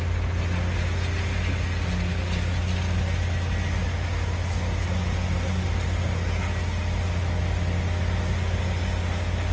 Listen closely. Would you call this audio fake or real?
real